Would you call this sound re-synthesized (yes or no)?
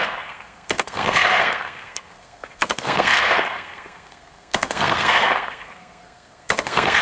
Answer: yes